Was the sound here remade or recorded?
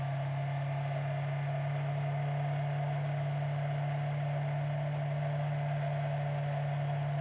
recorded